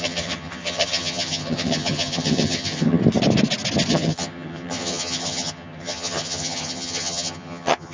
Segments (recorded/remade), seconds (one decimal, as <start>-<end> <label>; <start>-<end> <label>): 0.0-3.0 remade; 3.0-3.9 recorded; 3.9-7.9 remade